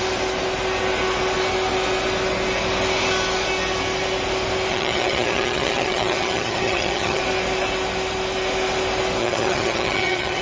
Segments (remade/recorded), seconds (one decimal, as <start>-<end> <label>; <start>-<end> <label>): 0.0-4.7 recorded; 4.7-7.2 remade; 7.2-9.2 recorded; 9.2-10.4 remade